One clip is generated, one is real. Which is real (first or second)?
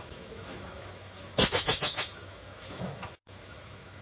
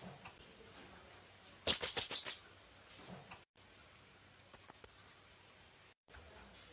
second